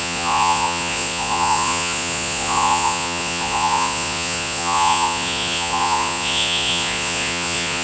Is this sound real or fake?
fake